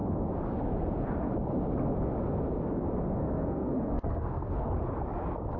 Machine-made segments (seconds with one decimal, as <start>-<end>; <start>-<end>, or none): 3.2-4.7